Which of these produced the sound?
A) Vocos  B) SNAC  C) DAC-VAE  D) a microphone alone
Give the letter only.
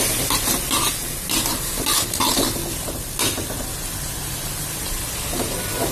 D